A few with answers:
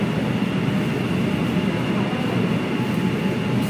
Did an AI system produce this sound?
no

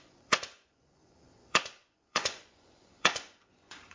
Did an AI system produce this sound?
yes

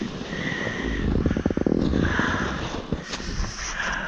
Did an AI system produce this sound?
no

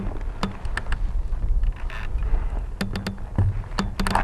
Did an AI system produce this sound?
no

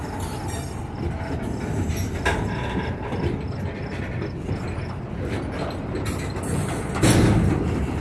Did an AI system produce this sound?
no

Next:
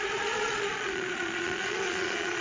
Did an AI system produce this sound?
yes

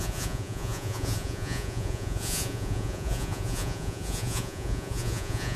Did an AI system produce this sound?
yes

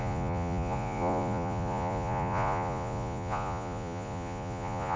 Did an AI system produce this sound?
yes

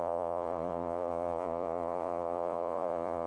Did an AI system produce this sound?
yes